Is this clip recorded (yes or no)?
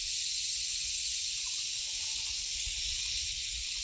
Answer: no